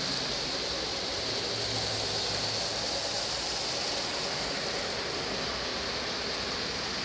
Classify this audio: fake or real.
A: real